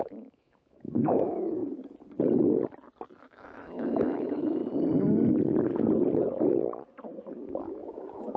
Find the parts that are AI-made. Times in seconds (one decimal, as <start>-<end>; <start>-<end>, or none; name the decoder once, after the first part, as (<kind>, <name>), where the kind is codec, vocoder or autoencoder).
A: 0.0-1.6 (autoencoder, DAC-VAE); 3.2-4.6; 7.6-8.4